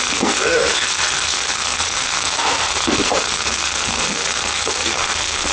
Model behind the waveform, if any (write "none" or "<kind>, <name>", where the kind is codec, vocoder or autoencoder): codec, SNAC